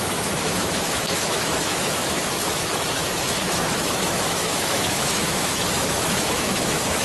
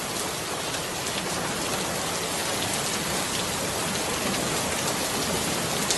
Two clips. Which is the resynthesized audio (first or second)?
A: first